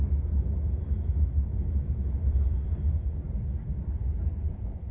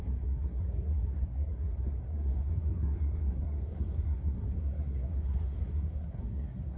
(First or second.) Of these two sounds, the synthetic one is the second